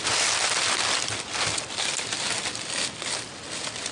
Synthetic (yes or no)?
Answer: no